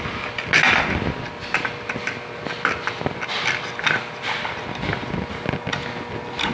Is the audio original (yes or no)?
yes